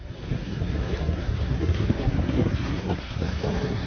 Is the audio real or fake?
fake